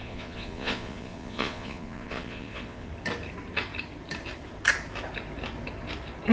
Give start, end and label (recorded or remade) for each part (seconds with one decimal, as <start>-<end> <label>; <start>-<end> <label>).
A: 0.0-2.9 remade; 2.9-6.3 recorded

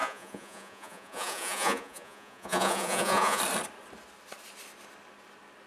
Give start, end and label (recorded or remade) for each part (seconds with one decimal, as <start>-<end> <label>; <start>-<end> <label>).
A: 0.0-3.4 remade; 3.4-5.7 recorded